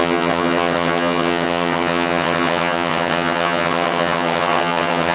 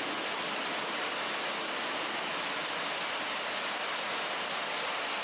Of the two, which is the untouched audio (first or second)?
second